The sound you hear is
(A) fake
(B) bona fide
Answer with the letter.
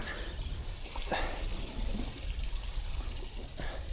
B